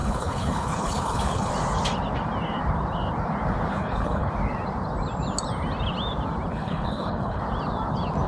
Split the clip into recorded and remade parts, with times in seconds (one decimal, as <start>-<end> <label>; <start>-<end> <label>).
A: 0.0-1.5 remade; 1.5-3.7 recorded; 3.7-4.3 remade; 4.3-6.5 recorded; 6.5-7.4 remade; 7.4-8.3 recorded